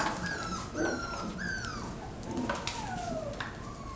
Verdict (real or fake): real